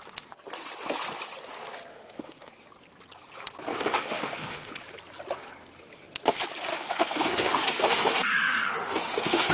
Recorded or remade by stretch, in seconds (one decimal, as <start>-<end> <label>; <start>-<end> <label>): 0.0-1.9 recorded; 1.9-2.5 remade; 2.5-3.7 recorded; 3.7-4.7 remade; 4.7-6.7 recorded; 6.7-9.5 remade